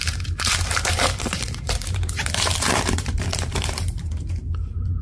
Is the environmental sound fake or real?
fake